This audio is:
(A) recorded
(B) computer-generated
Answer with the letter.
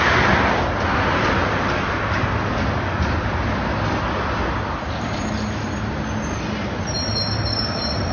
A